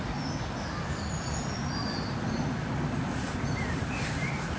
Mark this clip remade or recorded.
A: recorded